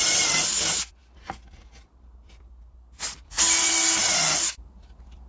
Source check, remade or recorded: recorded